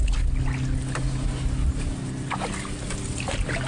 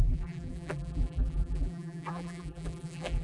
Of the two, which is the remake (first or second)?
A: second